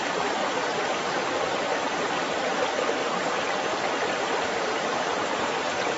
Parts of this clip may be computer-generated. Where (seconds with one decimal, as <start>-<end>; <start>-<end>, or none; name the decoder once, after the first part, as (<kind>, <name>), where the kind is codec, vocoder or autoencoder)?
0.4-2.5 (vocoder, BigVGAN v2); 3.0-5.5